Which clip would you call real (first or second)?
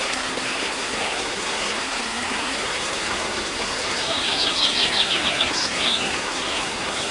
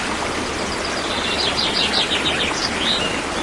second